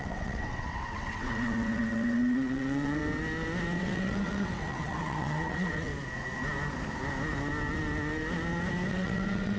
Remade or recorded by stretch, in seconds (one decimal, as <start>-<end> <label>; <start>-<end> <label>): 0.0-3.0 remade; 3.0-3.8 recorded; 3.8-5.9 remade; 5.9-8.9 recorded; 8.9-9.6 remade